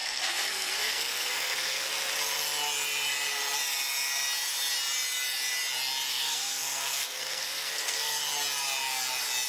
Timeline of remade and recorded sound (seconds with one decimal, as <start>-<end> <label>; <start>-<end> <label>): 0.0-1.9 remade; 1.9-6.1 recorded; 6.1-8.2 remade; 8.2-9.5 recorded